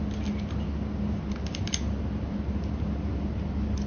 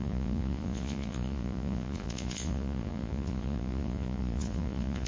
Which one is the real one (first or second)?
first